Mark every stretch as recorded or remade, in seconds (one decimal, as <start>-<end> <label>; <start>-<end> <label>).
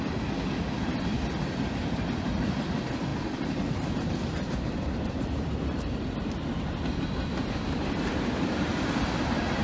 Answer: 0.0-3.1 recorded; 3.1-6.3 remade; 6.3-8.1 recorded; 8.1-8.7 remade; 8.7-9.6 recorded